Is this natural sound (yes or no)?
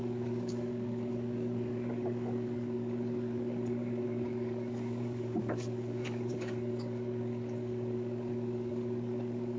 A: no